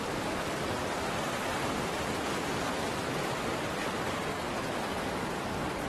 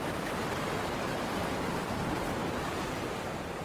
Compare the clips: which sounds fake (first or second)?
second